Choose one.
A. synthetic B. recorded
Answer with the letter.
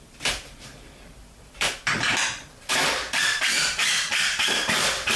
A